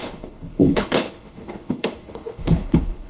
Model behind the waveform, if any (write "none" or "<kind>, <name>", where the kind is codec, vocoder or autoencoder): codec, HILCodec